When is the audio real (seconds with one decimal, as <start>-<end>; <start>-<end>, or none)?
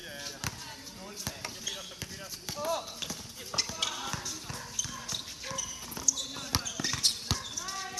0.0-8.0